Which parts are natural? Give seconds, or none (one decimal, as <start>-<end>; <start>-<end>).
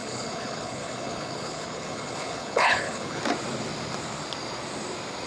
3.2-5.3